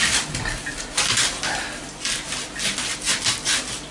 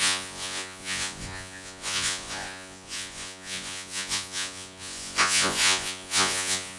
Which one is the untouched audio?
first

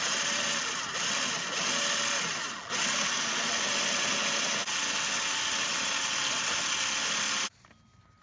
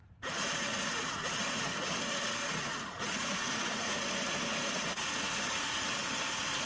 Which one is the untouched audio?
first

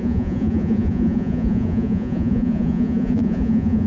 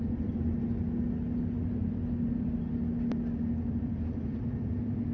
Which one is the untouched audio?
second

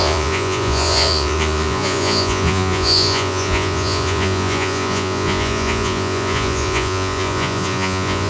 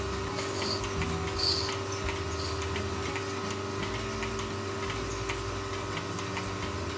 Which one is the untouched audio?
second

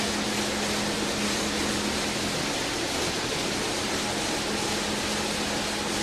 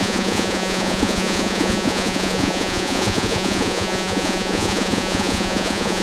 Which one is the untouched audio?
first